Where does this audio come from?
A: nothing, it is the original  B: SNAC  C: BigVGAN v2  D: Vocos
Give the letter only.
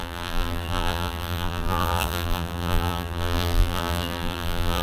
C